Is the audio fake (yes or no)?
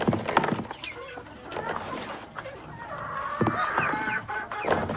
no